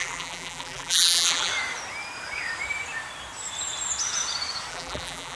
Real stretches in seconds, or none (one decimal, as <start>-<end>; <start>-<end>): 1.5-4.7